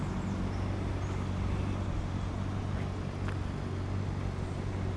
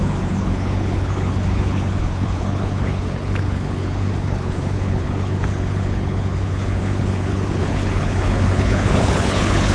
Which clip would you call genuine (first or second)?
first